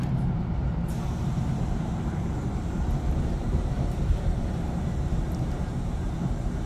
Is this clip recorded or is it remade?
remade